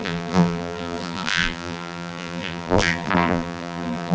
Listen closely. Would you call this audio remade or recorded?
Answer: remade